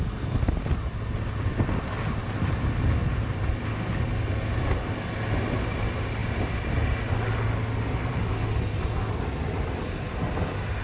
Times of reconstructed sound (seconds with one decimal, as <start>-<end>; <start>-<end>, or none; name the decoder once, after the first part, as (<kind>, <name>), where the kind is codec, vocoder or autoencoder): none